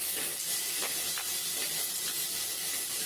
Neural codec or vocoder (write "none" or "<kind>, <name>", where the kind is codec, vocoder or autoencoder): none